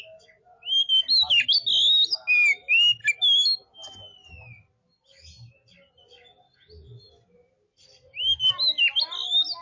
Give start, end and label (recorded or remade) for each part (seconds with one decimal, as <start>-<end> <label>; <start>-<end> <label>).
0.0-9.6 recorded